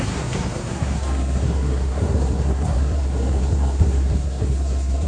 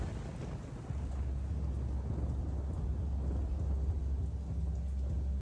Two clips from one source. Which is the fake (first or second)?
first